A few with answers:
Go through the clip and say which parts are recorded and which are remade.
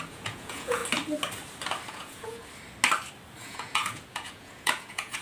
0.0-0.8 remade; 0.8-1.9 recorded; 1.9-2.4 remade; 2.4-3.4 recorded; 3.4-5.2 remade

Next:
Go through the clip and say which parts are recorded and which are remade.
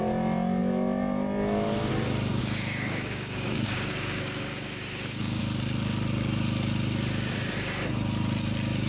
0.0-2.3 recorded; 2.3-5.4 remade; 5.4-8.9 recorded